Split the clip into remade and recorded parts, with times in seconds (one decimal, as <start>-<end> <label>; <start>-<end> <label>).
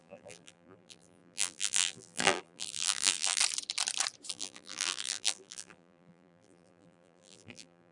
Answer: 0.0-3.4 remade; 3.4-4.3 recorded; 4.3-7.9 remade